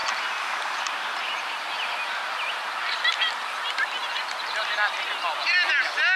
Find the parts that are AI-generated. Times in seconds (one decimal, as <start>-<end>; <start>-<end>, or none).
none